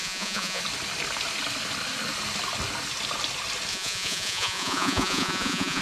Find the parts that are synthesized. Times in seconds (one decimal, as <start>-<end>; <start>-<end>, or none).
0.0-0.6; 3.7-5.8